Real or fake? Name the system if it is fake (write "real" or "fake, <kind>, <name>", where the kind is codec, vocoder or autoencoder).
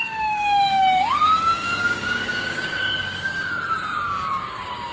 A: fake, codec, DAC